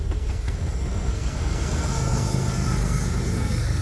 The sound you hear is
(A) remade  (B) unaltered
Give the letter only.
A